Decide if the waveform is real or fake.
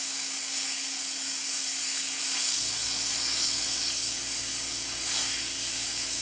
fake